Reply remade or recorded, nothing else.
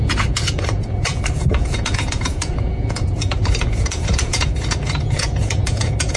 remade